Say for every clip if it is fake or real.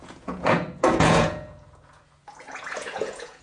fake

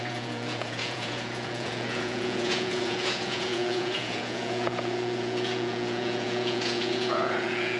fake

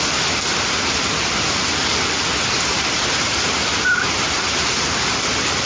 real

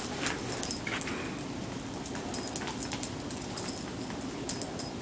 real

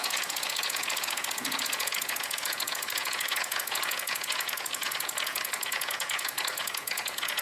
fake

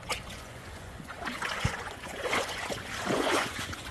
fake